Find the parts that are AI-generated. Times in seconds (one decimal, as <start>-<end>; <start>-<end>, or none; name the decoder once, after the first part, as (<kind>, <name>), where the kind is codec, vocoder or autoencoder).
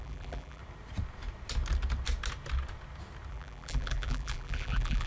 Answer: 0.0-0.6 (vocoder, BigVGAN v2); 3.3-5.1